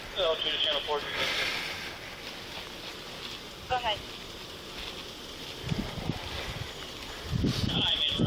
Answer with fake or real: real